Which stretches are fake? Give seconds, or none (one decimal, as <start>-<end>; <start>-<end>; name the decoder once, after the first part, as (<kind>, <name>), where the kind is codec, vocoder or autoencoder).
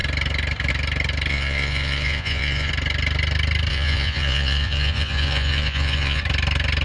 1.3-2.7 (vocoder, Vocos); 3.7-6.2